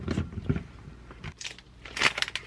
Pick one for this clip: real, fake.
real